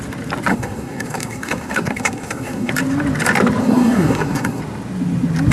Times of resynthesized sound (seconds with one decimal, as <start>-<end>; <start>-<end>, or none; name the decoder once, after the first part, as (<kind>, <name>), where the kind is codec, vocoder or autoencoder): 0.5-2.7 (codec, SNAC); 3.6-4.6